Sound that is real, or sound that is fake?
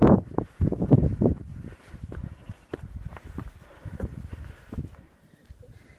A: fake